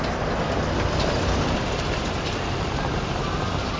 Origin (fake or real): real